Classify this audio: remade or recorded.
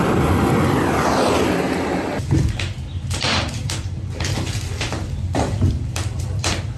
remade